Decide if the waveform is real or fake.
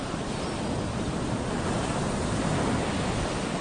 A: real